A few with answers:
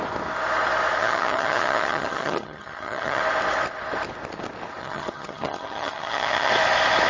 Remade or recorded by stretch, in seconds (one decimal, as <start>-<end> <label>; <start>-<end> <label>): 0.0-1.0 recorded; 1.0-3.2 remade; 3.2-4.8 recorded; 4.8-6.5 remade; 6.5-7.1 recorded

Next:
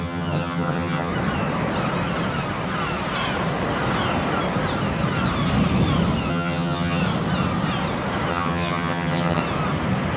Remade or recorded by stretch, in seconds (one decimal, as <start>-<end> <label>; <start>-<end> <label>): 0.0-1.1 remade; 1.1-6.3 recorded; 6.3-7.0 remade; 7.0-8.3 recorded; 8.3-9.4 remade; 9.4-10.2 recorded

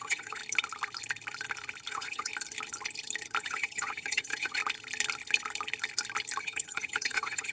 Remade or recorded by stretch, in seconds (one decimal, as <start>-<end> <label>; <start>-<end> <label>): 0.0-0.4 remade; 0.4-1.9 recorded; 1.9-2.3 remade; 2.3-3.4 recorded; 3.4-4.6 remade; 4.6-6.4 recorded; 6.4-7.5 remade